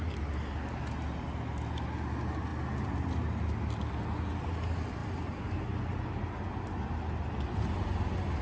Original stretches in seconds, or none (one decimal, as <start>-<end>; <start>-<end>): 0.0-8.4